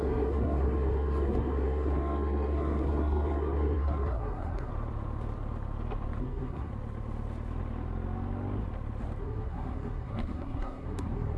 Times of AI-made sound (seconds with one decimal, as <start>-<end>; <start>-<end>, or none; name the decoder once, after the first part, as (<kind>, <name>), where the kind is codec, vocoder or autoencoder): 0.0-4.7 (codec, SNAC); 6.2-6.7; 9.2-11.4